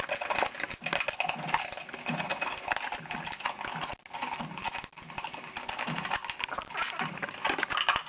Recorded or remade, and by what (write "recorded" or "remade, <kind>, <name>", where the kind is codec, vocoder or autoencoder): recorded